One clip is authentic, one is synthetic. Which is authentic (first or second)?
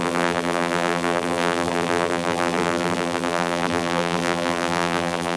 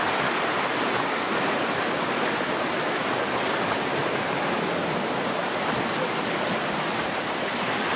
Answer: second